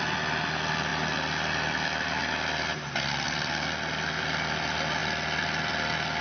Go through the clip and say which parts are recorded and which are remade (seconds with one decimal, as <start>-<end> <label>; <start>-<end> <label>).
0.0-6.2 recorded